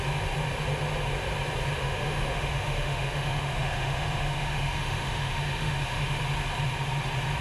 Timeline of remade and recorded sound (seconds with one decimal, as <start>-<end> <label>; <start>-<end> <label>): 0.0-1.8 recorded; 1.8-6.2 remade; 6.2-7.4 recorded